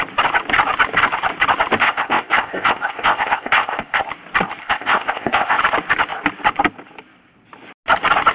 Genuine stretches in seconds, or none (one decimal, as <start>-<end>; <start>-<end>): 0.0-1.8; 4.0-4.6; 5.6-8.3

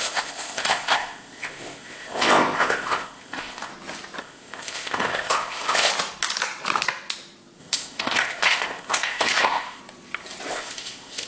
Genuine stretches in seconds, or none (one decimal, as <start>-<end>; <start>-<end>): 3.7-4.2; 5.9-7.6; 9.8-10.5

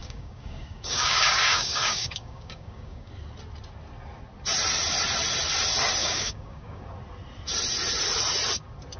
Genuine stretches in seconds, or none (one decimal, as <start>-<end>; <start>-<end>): 3.1-6.0; 6.8-9.0